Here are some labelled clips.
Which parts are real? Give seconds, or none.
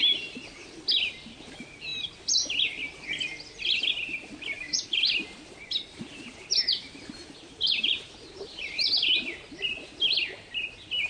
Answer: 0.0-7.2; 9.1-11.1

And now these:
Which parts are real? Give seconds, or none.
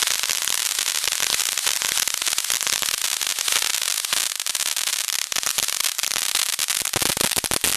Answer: 0.0-7.8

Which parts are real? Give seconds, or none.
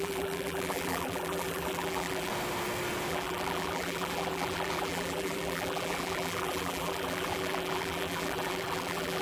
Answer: 2.3-3.1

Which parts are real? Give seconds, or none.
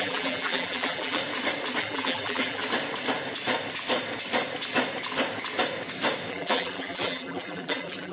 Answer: 1.2-1.8; 2.6-6.3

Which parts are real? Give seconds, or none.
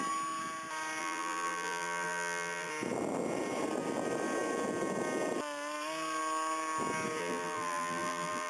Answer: 0.0-1.0; 2.7-7.2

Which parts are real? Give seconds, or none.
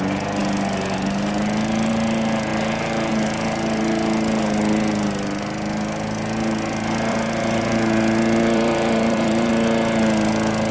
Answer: 0.0-7.1; 9.5-10.7